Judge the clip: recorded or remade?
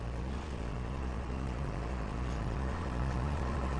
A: remade